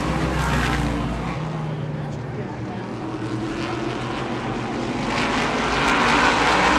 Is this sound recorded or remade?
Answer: recorded